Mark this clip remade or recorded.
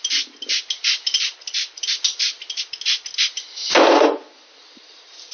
recorded